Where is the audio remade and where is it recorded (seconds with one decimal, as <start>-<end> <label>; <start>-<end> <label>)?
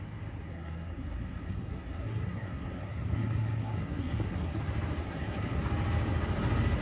0.0-0.5 recorded; 0.5-4.6 remade; 4.6-5.0 recorded; 5.0-5.6 remade; 5.6-6.8 recorded